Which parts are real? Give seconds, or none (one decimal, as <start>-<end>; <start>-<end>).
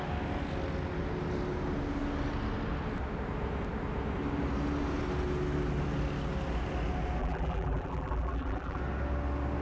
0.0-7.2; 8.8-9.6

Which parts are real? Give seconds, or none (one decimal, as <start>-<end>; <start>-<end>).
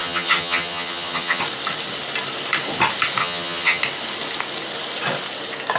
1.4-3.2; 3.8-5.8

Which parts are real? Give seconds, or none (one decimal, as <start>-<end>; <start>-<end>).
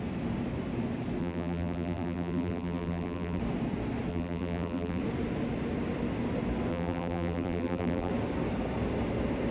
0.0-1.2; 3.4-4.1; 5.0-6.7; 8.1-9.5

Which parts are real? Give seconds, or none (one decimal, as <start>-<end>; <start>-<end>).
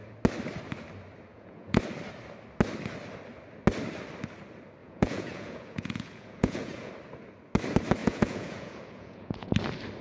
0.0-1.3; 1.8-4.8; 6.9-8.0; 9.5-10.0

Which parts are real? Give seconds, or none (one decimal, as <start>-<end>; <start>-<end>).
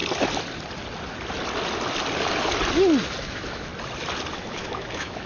0.0-3.2; 3.7-4.3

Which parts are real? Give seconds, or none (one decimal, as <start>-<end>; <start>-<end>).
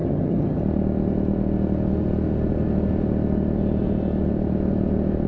0.6-5.3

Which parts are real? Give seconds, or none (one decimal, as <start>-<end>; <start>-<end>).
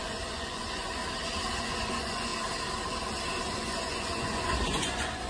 1.0-1.6; 2.3-3.4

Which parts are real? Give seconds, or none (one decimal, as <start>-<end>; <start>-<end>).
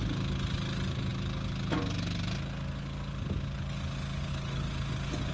0.0-5.3